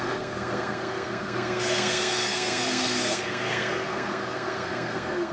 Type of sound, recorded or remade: remade